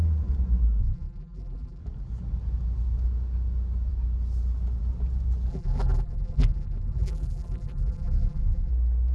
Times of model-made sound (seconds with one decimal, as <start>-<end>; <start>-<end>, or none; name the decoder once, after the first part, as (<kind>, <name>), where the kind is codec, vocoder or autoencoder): 0.8-1.8 (vocoder, BigVGAN v2); 5.5-8.7